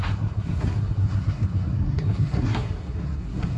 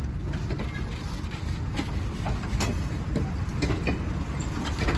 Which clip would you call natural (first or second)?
second